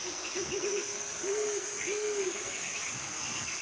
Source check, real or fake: fake